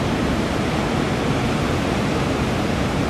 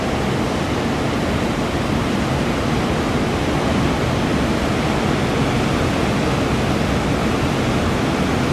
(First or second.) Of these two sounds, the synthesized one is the first